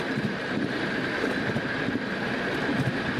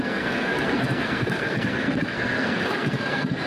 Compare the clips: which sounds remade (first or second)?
second